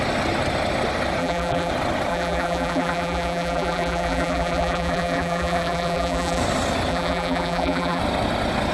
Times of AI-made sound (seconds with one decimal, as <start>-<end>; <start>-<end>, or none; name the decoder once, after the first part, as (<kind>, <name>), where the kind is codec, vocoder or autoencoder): 1.2-1.7 (vocoder, BigVGAN v2); 2.1-6.4; 6.9-8.0